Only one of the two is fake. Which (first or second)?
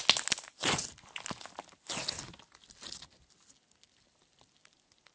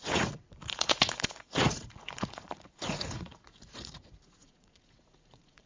second